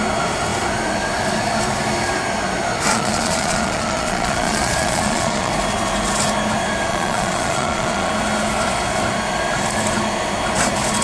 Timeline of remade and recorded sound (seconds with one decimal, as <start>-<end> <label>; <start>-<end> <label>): 0.0-2.9 recorded; 2.9-5.5 remade; 5.5-6.9 recorded; 6.9-8.1 remade; 8.1-11.0 recorded